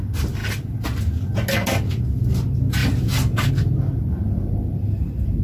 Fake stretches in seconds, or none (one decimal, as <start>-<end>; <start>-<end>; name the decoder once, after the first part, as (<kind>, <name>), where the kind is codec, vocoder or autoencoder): none